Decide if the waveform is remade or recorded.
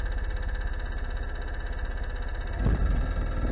recorded